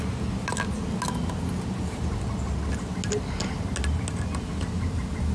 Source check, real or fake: real